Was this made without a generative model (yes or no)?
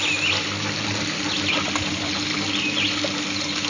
yes